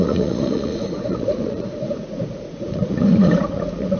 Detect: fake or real fake